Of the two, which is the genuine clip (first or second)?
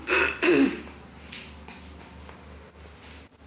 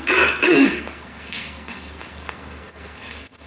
first